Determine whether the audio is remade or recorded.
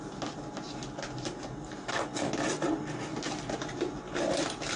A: recorded